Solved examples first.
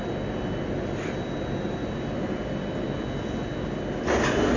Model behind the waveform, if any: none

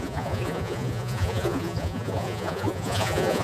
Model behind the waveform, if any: vocoder, Vocos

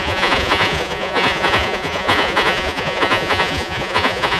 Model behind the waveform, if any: vocoder, Vocos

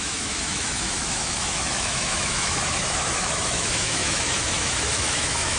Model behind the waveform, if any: autoencoder, DAC-VAE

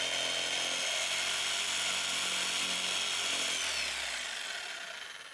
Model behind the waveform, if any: none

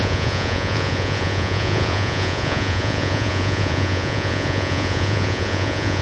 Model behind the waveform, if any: vocoder, Vocos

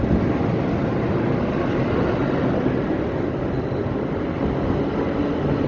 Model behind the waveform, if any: none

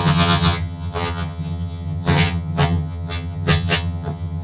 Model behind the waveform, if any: vocoder, HiFi-GAN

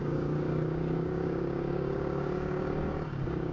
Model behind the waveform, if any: codec, DAC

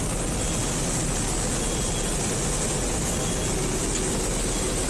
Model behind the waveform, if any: none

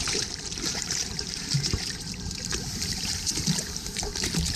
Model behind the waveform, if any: vocoder, BigVGAN v2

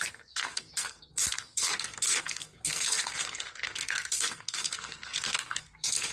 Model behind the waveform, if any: codec, SNAC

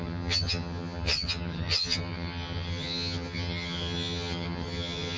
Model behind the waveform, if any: vocoder, HiFi-GAN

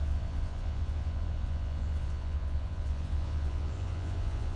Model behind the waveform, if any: vocoder, Vocos